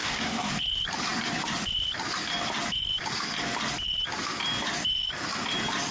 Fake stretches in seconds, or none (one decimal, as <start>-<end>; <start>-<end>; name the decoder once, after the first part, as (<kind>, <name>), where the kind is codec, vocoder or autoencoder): 0.0-0.5 (codec, SNAC)